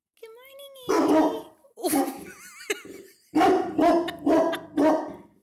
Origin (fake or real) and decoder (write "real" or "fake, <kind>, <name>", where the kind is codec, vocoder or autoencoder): real